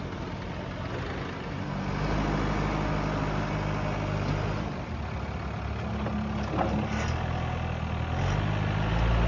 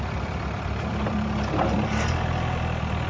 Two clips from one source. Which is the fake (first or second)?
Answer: second